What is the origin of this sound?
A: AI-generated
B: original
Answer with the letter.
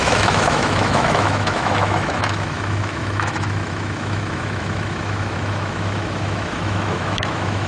A